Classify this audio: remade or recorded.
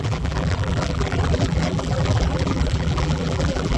remade